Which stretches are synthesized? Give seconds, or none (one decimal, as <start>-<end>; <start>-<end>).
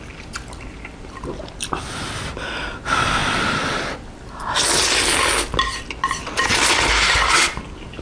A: none